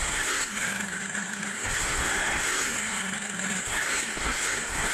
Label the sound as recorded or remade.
remade